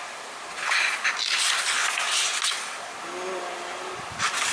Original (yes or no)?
yes